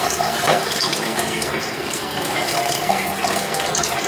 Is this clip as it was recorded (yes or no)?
no